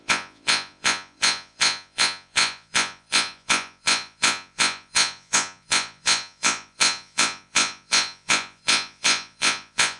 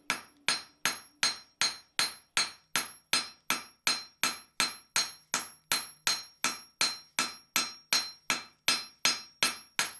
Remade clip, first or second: first